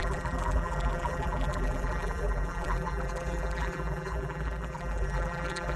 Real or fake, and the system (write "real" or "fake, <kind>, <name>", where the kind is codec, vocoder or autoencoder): fake, vocoder, BigVGAN v2